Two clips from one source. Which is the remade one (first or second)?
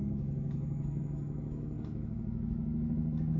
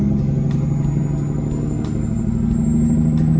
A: first